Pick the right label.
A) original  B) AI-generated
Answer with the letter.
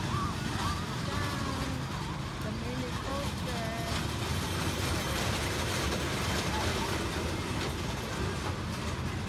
A